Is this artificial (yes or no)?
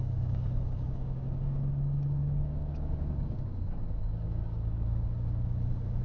yes